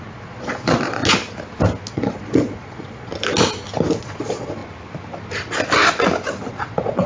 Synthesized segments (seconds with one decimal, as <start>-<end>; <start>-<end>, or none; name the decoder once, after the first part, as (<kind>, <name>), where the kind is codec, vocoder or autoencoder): 0.0-1.0 (vocoder, Vocos); 1.9-3.1; 4.0-4.6; 6.5-7.1

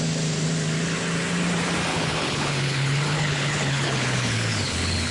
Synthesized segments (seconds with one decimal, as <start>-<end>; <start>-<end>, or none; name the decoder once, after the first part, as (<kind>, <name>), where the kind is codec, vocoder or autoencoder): 1.9-5.1 (codec, HILCodec)

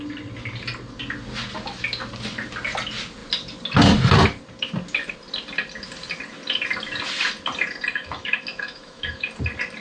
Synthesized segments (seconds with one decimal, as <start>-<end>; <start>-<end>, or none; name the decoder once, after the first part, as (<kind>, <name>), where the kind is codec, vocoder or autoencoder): 7.9-9.3 (autoencoder, DAC-VAE)

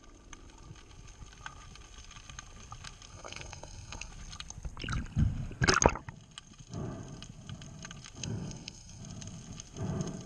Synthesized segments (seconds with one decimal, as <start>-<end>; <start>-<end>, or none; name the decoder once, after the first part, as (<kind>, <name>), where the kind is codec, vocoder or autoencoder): 3.1-4.1 (codec, SNAC); 8.2-9.0

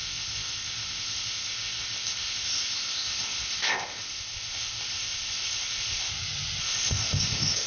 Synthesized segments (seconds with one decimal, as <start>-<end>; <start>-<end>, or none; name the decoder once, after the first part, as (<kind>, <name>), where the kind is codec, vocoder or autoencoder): 0.0-6.1 (codec, ZipCodec); 6.6-7.7

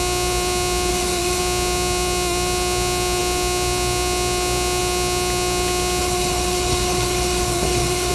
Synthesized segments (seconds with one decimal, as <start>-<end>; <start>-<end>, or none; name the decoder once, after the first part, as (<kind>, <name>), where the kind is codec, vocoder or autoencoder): 0.9-1.4 (codec, HILCodec); 6.0-8.1

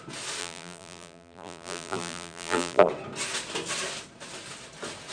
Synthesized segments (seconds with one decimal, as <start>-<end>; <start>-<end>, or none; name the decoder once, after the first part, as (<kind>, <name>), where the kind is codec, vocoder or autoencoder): 0.4-2.9 (vocoder, BigVGAN v2)

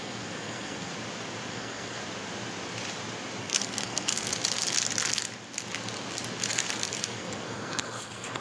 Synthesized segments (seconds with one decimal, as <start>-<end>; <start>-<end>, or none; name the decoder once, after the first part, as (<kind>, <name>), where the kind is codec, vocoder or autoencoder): 0.0-0.9 (codec, SNAC); 1.5-2.0; 3.4-4.3; 6.5-8.4